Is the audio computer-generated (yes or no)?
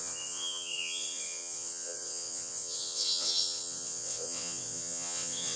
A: yes